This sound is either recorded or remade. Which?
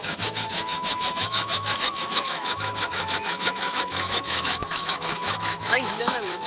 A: remade